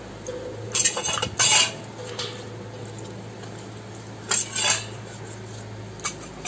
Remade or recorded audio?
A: recorded